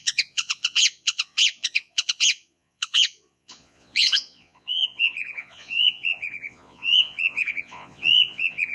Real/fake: fake